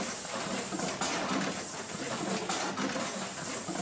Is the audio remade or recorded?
recorded